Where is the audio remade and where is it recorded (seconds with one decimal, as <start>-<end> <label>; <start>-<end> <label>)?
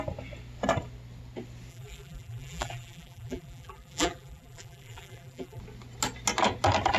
0.0-1.7 recorded; 1.7-5.6 remade; 5.6-7.0 recorded